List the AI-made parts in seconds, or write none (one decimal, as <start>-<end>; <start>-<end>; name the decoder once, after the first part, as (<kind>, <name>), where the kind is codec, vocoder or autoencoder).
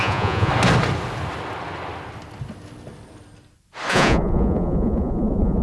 0.0-0.5 (vocoder, Vocos); 3.9-5.6